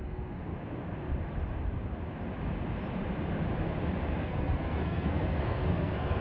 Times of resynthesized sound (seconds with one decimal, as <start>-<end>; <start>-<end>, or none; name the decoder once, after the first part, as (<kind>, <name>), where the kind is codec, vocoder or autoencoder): 0.0-0.5 (codec, SNAC); 4.2-6.2